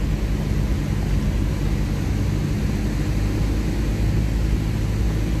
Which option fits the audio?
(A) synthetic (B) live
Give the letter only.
B